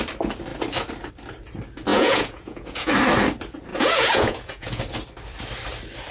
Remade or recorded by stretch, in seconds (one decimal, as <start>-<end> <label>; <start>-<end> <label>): 0.0-1.9 recorded; 1.9-2.9 remade; 2.9-3.7 recorded; 3.7-4.8 remade; 4.8-6.1 recorded